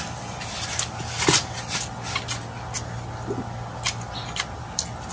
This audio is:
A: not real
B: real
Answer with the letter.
B